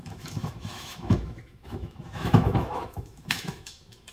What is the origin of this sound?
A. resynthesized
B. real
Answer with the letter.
A